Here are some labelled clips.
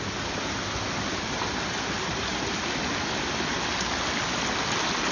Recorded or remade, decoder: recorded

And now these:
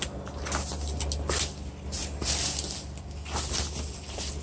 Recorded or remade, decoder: recorded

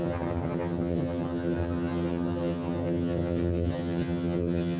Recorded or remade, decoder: remade, vocoder, HiFi-GAN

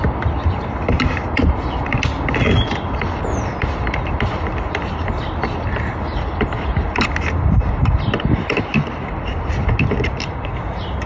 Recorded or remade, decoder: recorded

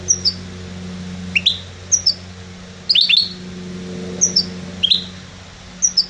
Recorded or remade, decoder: recorded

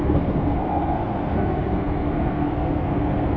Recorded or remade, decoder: remade, codec, SNAC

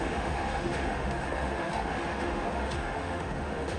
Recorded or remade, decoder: remade, autoencoder, DAC-VAE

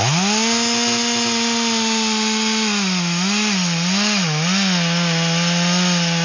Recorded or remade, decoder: recorded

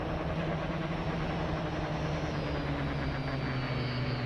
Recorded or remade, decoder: recorded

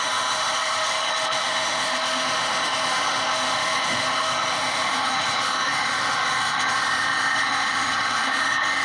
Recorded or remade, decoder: remade, autoencoder, DAC-VAE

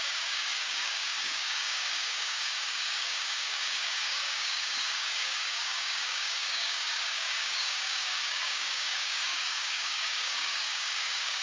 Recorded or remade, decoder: remade, codec, DAC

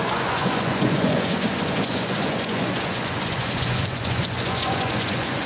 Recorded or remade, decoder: remade, vocoder, Vocos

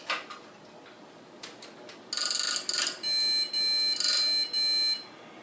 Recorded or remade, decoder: recorded